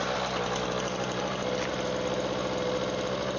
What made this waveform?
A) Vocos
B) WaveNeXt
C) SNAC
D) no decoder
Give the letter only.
D